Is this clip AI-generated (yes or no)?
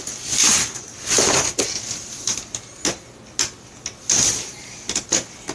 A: no